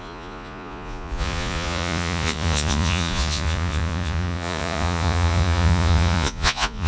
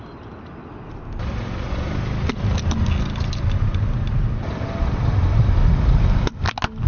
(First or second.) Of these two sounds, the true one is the second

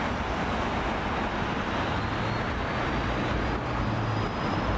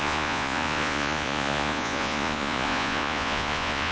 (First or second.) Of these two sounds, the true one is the first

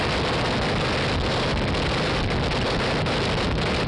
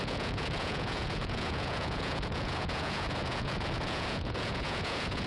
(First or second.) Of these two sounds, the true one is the first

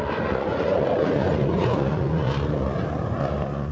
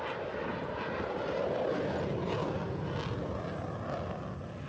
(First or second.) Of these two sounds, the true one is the second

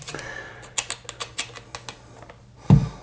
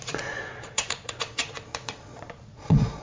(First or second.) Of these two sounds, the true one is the first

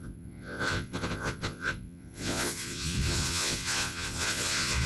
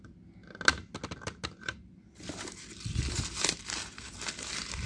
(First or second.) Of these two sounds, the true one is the second